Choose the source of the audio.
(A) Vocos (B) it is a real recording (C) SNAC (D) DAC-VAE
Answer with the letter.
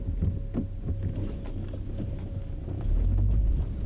B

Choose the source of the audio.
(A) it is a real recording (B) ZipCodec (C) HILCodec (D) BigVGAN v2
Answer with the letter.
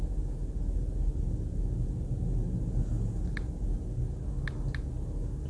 A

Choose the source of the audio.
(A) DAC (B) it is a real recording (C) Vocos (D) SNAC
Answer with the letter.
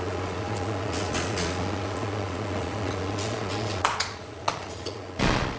C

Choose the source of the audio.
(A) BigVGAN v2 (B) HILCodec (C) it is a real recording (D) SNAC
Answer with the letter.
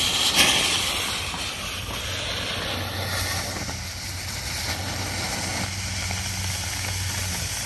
C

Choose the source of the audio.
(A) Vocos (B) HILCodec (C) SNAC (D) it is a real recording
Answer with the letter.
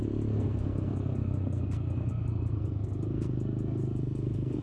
C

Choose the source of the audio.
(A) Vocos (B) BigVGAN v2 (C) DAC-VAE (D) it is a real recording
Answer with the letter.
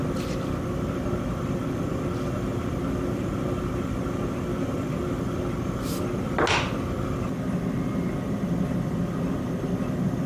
D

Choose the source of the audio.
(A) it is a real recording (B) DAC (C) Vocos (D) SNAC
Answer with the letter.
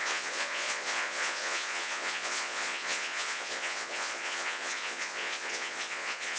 C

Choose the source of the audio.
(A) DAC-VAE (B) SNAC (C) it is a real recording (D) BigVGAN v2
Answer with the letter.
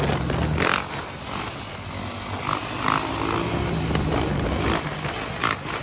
C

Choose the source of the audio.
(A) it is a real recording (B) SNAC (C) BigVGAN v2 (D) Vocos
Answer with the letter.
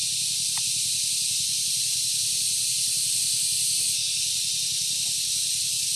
C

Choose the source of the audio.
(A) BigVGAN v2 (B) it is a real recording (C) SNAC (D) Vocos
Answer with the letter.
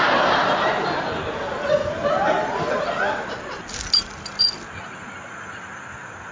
B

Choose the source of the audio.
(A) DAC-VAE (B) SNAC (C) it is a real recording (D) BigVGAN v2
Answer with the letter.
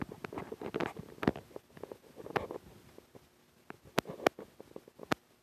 C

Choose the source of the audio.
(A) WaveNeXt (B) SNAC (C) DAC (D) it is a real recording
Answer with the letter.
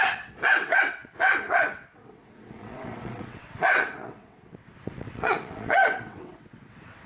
A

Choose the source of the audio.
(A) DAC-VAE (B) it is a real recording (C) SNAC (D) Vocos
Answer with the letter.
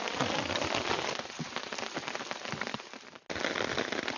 B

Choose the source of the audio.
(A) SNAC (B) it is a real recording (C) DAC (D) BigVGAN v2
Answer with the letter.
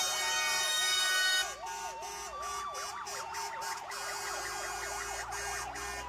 B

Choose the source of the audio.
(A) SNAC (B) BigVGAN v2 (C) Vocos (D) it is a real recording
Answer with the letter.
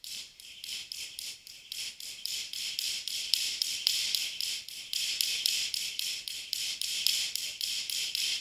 B